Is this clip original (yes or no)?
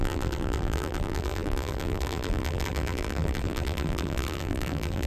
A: no